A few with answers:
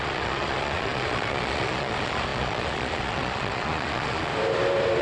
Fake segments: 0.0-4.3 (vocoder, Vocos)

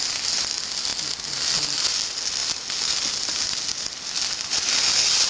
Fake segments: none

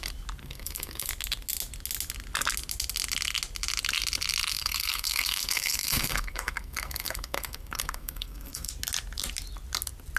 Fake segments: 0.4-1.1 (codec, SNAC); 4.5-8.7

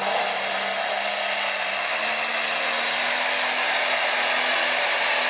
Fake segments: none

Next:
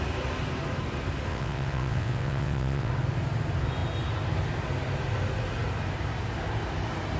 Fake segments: 1.3-2.9 (vocoder, WaveNeXt)

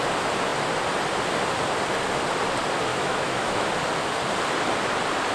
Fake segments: 2.9-3.7 (autoencoder, DAC-VAE)